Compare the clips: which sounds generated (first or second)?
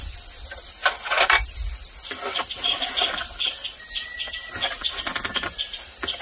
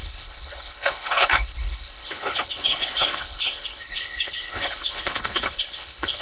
second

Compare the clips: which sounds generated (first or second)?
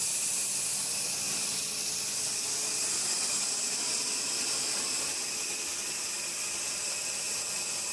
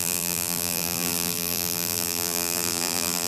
second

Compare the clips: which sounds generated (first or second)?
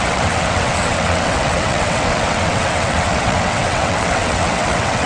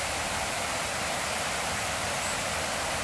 first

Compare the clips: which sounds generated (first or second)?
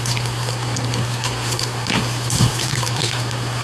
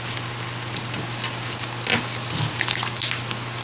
first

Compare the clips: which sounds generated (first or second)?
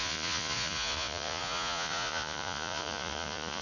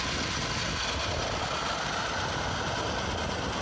first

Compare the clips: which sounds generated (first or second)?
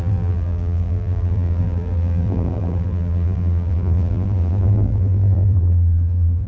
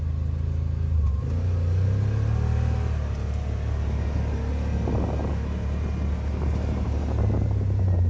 first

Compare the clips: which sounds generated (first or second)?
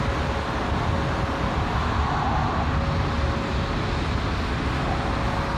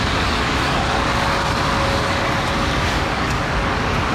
second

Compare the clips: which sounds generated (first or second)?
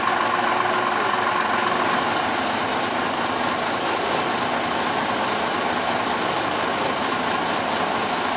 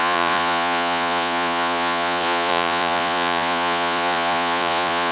second